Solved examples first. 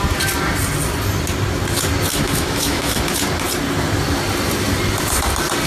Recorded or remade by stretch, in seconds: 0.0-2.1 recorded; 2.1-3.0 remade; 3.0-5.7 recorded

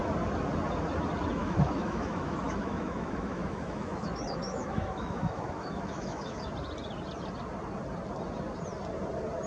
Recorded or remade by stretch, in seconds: 0.0-1.4 recorded; 1.4-6.5 remade; 6.5-9.5 recorded

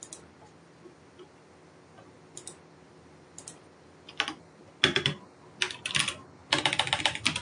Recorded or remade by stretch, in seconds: 0.0-7.4 recorded

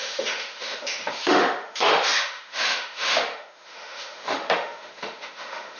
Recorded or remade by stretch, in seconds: 0.0-5.8 remade